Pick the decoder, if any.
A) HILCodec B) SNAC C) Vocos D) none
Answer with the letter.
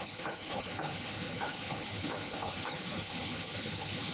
A